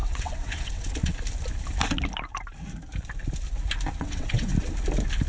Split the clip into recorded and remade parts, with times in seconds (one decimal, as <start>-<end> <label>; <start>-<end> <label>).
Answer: 0.0-1.1 remade; 1.1-4.0 recorded; 4.0-4.5 remade; 4.5-5.3 recorded